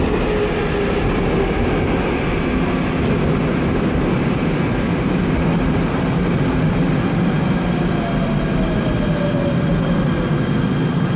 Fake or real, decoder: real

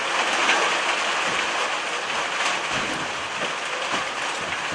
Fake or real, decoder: real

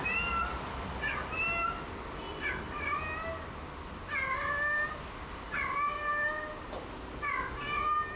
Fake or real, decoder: real